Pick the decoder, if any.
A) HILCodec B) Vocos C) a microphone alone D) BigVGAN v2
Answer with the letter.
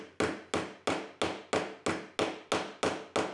C